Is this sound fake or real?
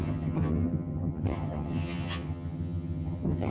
fake